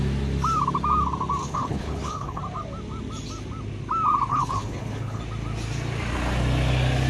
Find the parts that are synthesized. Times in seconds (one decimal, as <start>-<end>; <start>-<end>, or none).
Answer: 1.4-2.4; 4.3-5.2